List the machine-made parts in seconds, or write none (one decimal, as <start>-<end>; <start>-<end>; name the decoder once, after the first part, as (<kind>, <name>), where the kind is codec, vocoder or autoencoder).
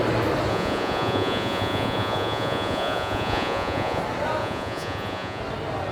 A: 0.5-4.0 (vocoder, Vocos); 4.4-5.4